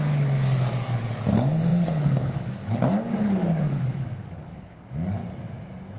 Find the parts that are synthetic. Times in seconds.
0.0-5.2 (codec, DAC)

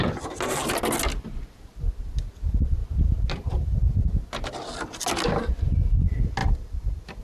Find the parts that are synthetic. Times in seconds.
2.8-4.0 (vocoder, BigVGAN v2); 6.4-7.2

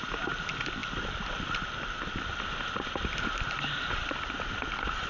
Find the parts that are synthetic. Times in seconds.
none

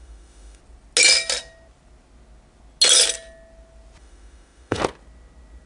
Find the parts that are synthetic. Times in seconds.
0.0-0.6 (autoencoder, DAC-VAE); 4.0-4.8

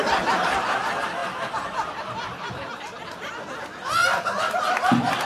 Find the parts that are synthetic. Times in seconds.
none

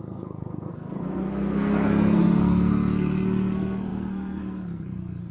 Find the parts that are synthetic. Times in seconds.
0.0-5.3 (codec, SNAC)